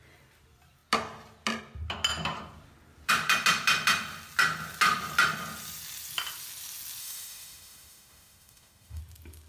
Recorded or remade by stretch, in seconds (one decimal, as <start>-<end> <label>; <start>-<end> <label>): 0.0-7.0 recorded; 7.0-9.0 remade; 9.0-9.5 recorded